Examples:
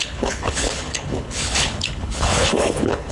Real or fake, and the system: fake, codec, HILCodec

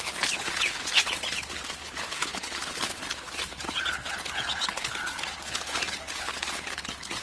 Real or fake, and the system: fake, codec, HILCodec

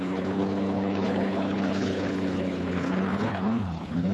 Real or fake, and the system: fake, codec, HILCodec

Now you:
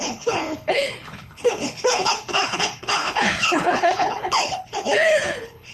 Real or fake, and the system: fake, codec, HILCodec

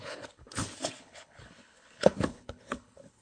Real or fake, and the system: fake, codec, HILCodec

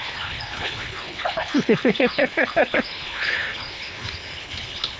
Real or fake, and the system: fake, codec, HILCodec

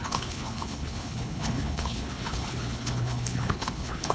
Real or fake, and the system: fake, codec, HILCodec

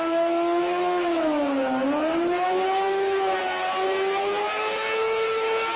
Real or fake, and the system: real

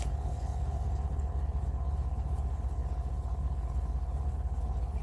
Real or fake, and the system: fake, codec, HILCodec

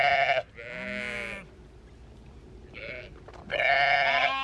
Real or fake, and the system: real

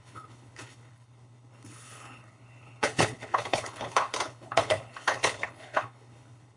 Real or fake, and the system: fake, codec, HILCodec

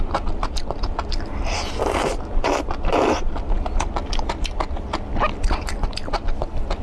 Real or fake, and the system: real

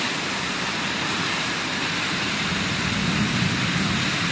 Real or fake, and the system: real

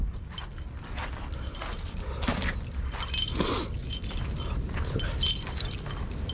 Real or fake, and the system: real